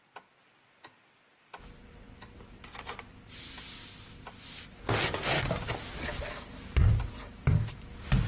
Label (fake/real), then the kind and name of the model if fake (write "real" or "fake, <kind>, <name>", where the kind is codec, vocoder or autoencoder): real